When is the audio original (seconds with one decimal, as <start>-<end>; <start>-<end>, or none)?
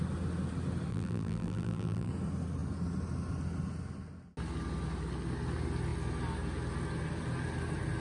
0.0-0.9; 2.1-8.0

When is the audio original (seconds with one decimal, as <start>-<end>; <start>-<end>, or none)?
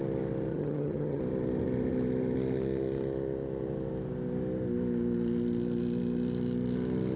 0.0-0.5; 1.2-7.2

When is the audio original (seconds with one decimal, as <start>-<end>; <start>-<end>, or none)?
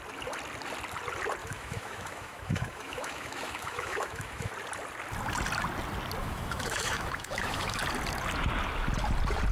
0.0-1.4; 4.5-6.2; 7.8-9.5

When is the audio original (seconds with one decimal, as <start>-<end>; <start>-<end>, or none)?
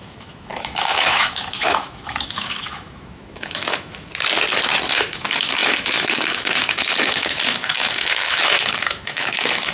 4.1-5.1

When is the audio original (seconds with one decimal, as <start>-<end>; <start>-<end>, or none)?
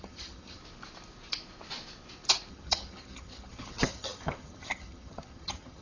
0.6-2.5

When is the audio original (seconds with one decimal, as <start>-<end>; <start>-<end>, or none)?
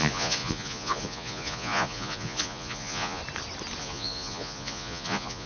3.2-3.8